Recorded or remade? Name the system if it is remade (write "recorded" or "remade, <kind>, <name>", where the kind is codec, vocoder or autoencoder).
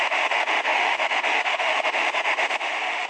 remade, autoencoder, DAC-VAE